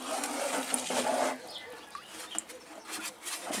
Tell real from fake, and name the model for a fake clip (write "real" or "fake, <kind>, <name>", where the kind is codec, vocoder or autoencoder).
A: real